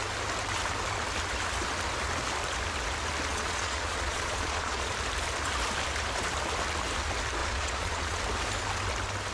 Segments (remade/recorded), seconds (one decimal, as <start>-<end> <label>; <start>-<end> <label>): 0.0-3.3 recorded; 3.3-4.9 remade; 4.9-7.4 recorded; 7.4-8.2 remade; 8.2-9.3 recorded